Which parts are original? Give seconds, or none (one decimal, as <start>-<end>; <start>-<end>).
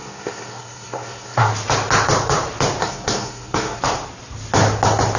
1.5-2.8; 3.8-5.2